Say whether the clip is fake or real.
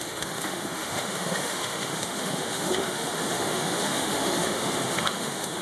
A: fake